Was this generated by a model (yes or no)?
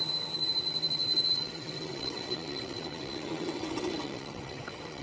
yes